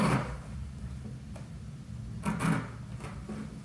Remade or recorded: recorded